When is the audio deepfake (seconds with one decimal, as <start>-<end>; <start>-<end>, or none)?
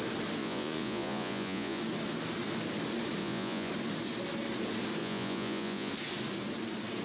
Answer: 0.4-1.8; 3.2-3.7; 5.0-5.9